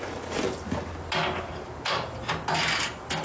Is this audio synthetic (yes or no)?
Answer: no